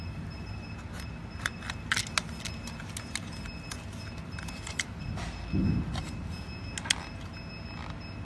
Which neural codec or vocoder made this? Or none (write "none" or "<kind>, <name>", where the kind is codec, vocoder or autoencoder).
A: none